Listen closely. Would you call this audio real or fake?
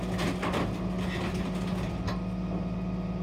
real